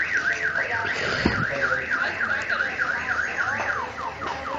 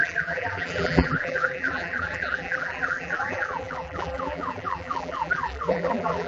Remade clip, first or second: second